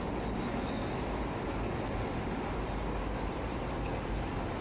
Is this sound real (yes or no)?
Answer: yes